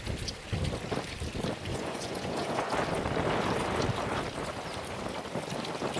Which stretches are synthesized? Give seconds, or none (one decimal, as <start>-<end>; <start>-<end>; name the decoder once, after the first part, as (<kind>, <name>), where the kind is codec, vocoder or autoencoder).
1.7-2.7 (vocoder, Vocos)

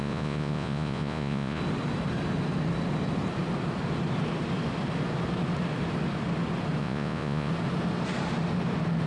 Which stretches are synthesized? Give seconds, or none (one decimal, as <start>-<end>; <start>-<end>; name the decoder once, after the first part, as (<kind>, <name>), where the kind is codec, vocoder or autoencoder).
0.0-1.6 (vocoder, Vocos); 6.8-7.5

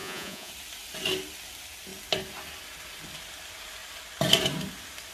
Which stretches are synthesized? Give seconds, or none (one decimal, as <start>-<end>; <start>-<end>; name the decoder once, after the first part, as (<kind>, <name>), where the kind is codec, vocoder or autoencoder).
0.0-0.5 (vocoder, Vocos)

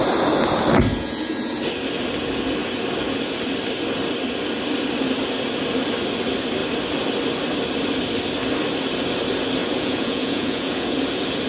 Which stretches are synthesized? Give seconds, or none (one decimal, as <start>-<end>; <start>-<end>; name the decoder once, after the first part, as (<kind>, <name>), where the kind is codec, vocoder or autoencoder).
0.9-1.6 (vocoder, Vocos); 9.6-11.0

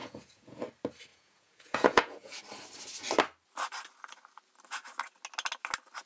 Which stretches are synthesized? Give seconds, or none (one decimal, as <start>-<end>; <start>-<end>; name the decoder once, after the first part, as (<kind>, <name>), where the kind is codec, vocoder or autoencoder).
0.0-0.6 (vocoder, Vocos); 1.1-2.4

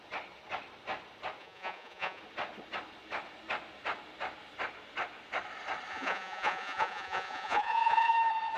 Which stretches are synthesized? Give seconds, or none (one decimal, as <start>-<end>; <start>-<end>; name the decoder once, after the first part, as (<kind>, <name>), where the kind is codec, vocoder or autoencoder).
1.4-2.2 (vocoder, Vocos); 5.9-8.1

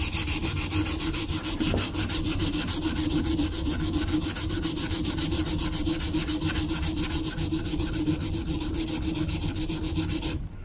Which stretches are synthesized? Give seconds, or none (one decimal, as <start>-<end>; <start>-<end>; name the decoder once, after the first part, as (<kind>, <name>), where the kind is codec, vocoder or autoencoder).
none